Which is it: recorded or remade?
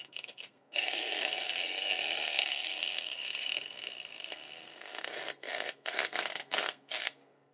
remade